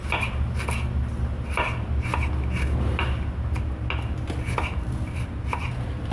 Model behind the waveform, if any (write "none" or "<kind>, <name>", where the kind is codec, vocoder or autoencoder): none